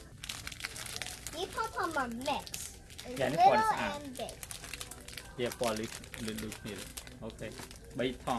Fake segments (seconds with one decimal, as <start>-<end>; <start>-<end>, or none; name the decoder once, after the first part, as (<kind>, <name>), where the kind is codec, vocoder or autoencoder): none